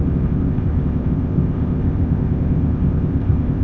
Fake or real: fake